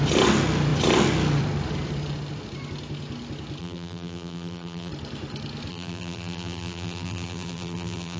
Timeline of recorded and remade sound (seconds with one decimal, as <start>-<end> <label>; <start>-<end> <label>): 0.0-3.6 recorded; 3.6-4.9 remade; 4.9-5.7 recorded; 5.7-8.2 remade